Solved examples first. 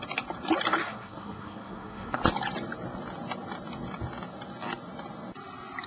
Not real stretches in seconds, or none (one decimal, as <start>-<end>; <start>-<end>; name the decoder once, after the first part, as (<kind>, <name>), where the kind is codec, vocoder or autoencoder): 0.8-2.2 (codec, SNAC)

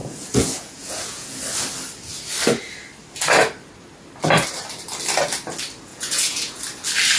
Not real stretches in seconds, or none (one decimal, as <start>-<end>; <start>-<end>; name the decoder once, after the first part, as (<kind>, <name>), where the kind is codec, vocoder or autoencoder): 0.0-1.4 (vocoder, Vocos); 5.9-6.6

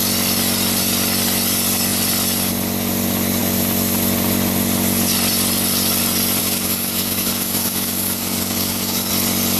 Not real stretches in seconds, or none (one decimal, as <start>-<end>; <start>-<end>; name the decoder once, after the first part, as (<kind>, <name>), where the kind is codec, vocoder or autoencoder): 6.4-9.1 (codec, DAC)